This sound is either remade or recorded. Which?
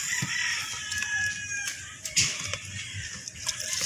remade